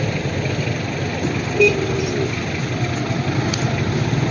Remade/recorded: recorded